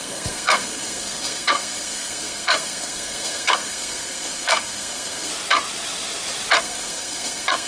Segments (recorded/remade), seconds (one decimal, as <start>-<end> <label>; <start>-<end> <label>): 0.0-5.3 remade; 5.3-6.6 recorded; 6.6-7.7 remade